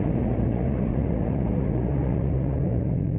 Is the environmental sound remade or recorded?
remade